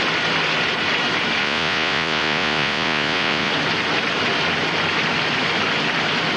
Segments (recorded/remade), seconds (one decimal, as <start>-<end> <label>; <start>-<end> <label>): 0.0-1.4 recorded; 1.4-3.5 remade; 3.5-6.4 recorded